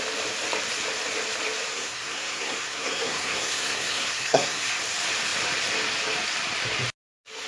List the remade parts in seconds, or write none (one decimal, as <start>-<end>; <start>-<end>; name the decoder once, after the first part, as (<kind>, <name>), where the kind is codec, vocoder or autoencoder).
1.7-4.7 (codec, SNAC)